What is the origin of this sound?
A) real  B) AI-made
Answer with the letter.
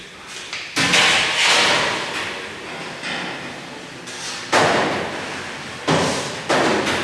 A